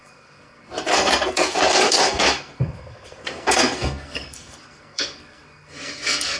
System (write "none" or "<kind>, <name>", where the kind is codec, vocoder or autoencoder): codec, SNAC